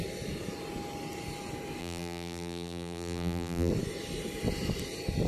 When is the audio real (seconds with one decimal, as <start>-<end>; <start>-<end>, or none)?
0.0-1.8; 3.7-5.3